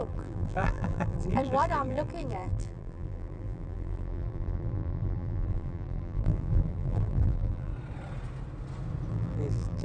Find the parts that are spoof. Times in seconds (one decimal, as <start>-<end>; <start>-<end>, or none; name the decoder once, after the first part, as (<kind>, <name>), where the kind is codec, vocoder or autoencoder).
0.0-7.7 (vocoder, BigVGAN v2); 9.1-9.8